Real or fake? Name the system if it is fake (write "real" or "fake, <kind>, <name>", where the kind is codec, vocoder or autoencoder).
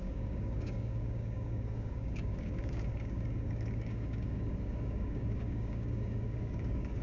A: fake, codec, DAC